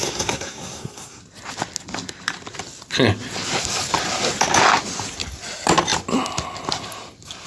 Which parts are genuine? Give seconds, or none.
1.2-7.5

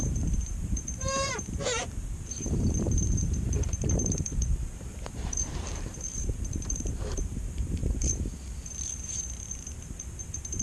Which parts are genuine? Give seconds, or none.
none

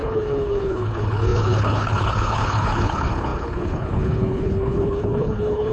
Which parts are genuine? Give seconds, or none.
none

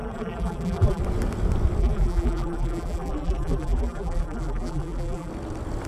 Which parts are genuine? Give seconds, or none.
1.0-1.8; 5.3-5.9

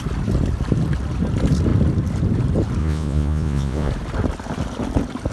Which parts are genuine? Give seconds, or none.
0.0-2.8; 3.9-5.3

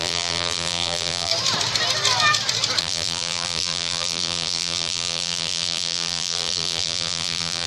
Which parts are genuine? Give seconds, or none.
1.3-2.8